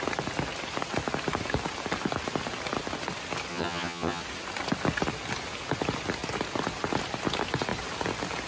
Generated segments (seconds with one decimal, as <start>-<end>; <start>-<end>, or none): 3.5-4.2